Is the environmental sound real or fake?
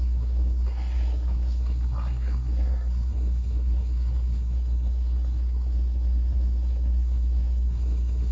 fake